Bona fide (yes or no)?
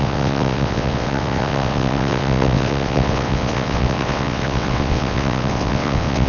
no